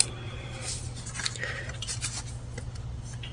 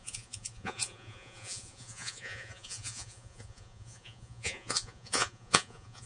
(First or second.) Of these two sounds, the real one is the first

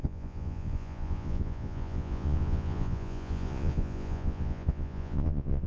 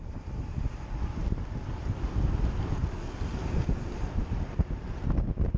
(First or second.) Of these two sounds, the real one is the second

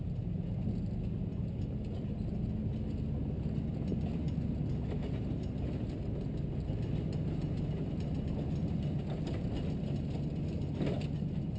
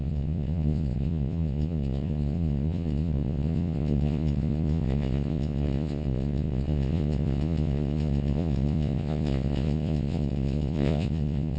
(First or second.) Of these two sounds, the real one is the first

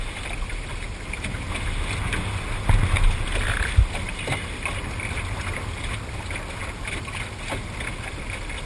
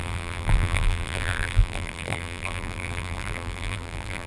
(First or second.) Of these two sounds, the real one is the first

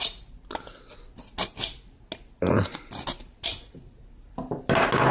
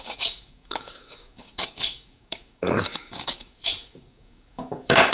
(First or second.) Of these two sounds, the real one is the first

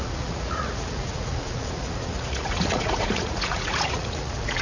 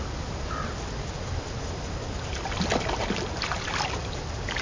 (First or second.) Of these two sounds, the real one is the second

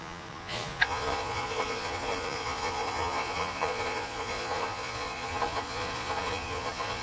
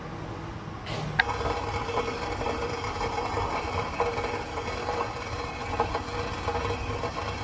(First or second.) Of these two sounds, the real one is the second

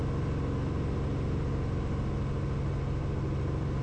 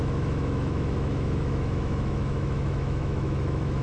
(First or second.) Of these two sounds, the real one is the first